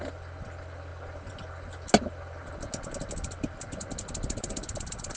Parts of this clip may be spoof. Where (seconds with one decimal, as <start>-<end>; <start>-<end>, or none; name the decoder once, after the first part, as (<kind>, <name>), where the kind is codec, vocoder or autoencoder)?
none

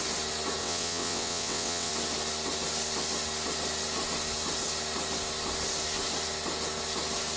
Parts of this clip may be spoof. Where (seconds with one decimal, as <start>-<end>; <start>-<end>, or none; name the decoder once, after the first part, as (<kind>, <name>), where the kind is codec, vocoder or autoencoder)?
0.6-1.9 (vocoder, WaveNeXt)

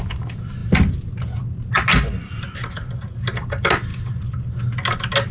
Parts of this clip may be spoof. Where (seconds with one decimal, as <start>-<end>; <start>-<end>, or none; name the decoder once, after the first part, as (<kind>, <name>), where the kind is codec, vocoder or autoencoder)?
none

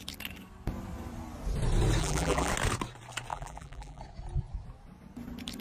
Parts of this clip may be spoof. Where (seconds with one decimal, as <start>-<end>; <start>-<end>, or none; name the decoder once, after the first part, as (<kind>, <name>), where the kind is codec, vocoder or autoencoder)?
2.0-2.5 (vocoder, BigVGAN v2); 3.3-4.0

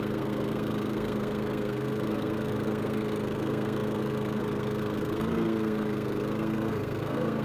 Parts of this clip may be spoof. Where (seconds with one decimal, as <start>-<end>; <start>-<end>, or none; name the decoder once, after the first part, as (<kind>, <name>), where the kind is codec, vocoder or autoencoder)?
0.0-7.4 (codec, SNAC)

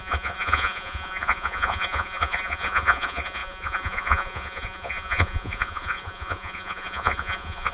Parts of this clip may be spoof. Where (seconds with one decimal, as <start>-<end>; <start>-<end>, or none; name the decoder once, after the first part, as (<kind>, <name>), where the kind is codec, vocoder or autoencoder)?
0.0-7.7 (vocoder, Vocos)